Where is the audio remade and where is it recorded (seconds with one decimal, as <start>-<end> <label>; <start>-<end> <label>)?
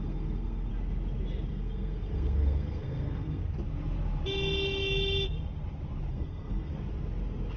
0.0-0.7 remade; 0.7-1.5 recorded; 1.5-3.4 remade; 3.4-6.1 recorded; 6.1-6.7 remade; 6.7-7.6 recorded